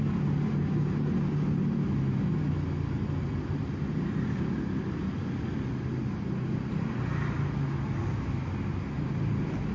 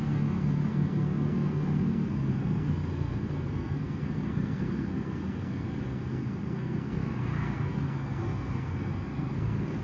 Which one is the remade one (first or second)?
second